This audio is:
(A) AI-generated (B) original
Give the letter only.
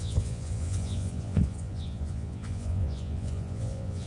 A